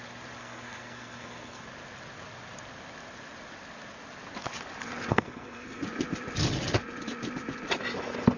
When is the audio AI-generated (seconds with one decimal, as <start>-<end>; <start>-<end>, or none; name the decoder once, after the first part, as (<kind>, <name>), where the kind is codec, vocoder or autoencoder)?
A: 0.4-1.6 (codec, SNAC); 5.1-5.8